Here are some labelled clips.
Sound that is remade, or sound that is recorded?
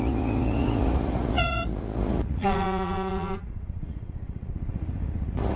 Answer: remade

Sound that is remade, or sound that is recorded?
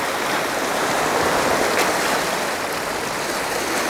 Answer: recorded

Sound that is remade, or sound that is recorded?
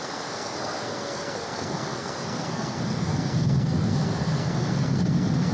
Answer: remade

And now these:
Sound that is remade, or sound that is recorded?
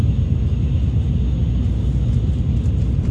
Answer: recorded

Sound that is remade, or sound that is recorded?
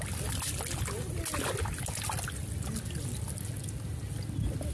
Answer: recorded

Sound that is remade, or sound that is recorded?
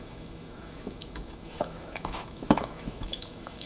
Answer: remade